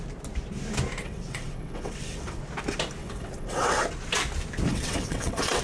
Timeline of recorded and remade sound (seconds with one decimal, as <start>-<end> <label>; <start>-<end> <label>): 0.0-1.0 recorded; 1.0-2.4 remade; 2.4-3.0 recorded; 3.0-3.8 remade; 3.8-4.7 recorded; 4.7-5.6 remade